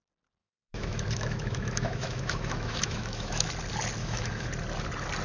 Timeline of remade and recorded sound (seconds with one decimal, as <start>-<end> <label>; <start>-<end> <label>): 0.0-0.4 recorded; 0.4-3.5 remade; 3.5-4.0 recorded; 4.0-4.5 remade; 4.5-5.2 recorded